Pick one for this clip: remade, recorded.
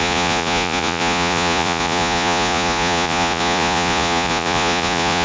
remade